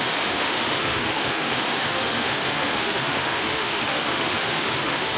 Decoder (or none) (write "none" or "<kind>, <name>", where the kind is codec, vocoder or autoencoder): autoencoder, DAC-VAE